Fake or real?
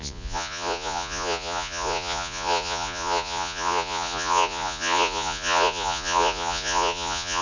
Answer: fake